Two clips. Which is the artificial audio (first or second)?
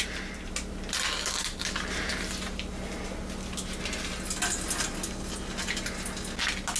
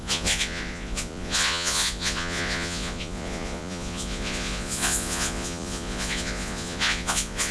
second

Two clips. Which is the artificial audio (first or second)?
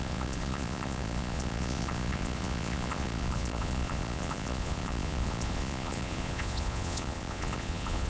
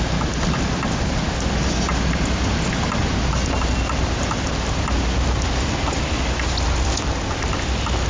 first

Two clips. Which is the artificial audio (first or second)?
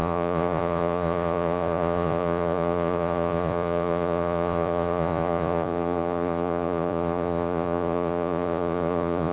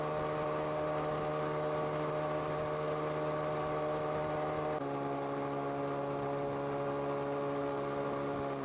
first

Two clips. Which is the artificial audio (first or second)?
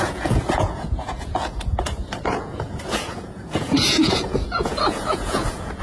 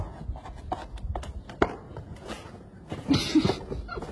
first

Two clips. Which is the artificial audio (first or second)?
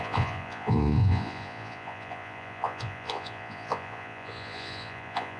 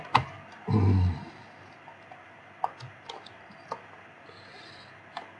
first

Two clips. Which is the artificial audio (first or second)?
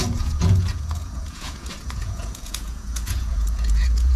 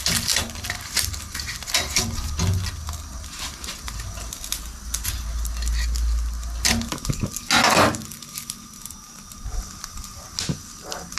first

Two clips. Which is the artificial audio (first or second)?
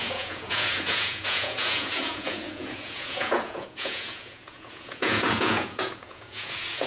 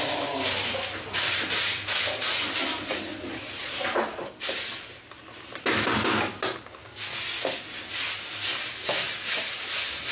first